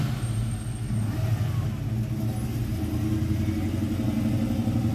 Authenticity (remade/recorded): recorded